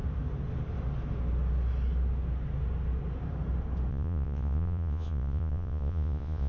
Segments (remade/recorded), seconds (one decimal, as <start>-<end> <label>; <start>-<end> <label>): 0.0-3.9 recorded; 3.9-6.5 remade